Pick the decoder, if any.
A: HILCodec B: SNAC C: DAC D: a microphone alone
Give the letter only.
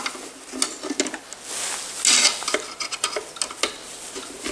D